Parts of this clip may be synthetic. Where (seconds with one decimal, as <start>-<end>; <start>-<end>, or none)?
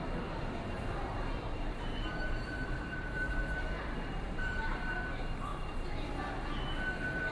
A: 1.5-5.1; 5.5-6.1